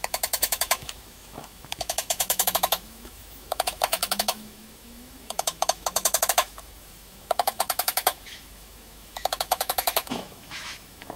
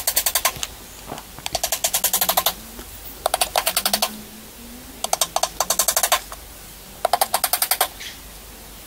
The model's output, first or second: first